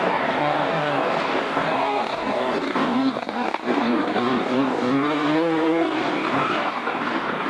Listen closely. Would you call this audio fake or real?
fake